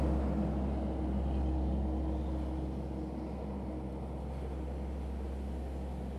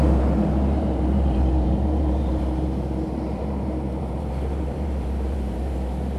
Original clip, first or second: first